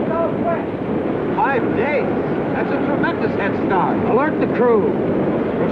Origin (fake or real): real